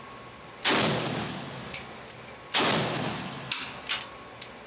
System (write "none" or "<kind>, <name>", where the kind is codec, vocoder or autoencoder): none